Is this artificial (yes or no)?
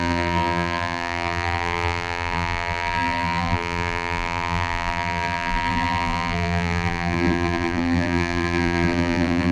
yes